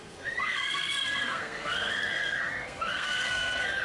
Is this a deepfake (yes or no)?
yes